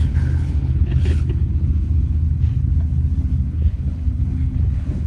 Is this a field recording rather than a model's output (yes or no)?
no